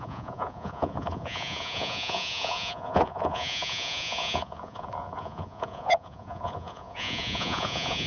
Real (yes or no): no